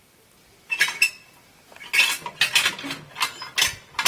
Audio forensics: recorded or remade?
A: recorded